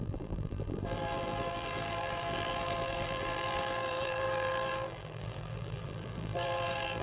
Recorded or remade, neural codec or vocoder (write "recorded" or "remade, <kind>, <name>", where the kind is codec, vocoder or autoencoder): remade, vocoder, BigVGAN v2